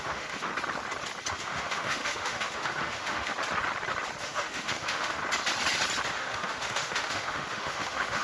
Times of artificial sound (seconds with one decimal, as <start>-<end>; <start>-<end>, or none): 0.0-0.5; 1.3-3.3; 4.2-5.2; 6.1-8.2